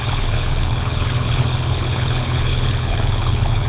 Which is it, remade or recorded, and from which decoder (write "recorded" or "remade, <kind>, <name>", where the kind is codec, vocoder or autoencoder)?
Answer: remade, codec, HILCodec